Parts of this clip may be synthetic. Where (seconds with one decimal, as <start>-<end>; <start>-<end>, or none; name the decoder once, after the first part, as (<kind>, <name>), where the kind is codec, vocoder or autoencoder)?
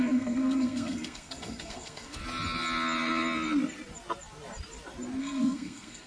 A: 0.0-2.2 (codec, SNAC); 5.2-6.1